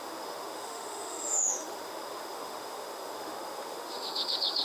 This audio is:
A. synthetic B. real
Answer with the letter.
A